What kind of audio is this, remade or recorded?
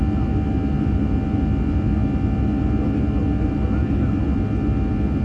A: recorded